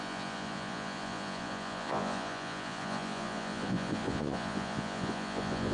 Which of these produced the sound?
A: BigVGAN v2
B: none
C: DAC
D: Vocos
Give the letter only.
D